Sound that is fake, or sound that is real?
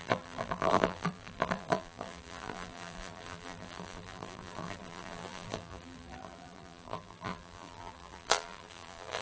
fake